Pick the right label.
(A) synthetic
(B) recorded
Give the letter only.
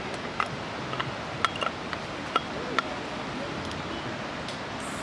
B